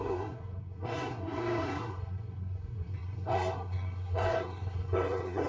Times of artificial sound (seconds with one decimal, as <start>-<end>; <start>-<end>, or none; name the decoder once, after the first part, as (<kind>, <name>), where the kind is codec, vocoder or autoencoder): 0.0-5.5 (codec, SNAC)